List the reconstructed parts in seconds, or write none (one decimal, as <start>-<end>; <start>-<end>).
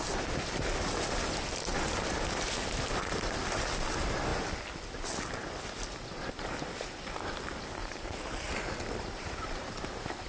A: 7.8-9.9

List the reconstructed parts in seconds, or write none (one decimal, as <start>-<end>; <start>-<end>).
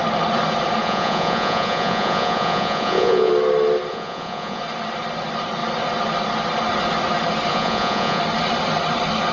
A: 0.8-3.3; 3.9-4.6; 7.5-8.2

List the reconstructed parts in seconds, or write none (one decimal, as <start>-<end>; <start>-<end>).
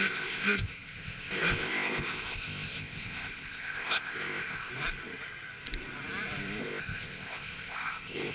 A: 0.0-4.7; 6.6-8.3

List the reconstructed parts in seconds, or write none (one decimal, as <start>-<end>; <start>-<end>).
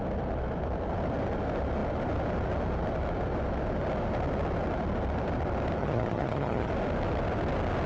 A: 5.8-6.7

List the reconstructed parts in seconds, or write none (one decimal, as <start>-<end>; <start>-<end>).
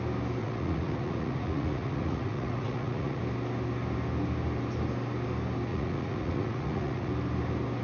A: 0.4-3.2; 5.7-7.1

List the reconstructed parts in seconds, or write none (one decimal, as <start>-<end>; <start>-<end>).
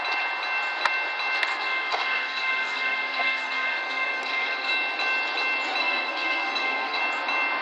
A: 1.5-4.7; 5.8-7.0